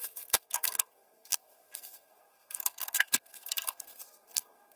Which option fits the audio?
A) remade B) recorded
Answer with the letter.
A